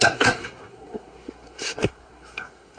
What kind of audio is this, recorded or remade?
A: remade